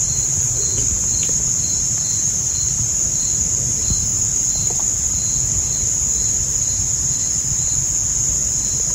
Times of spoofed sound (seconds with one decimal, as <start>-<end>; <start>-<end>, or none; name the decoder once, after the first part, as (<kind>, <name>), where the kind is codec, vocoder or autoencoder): none